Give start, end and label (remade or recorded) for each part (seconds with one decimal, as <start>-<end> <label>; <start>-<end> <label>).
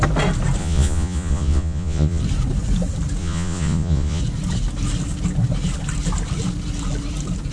0.0-0.6 recorded; 0.6-2.2 remade; 2.2-3.2 recorded; 3.2-4.2 remade; 4.2-7.5 recorded